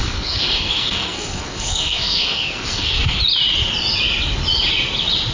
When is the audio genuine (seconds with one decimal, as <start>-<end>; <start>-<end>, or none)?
3.2-5.3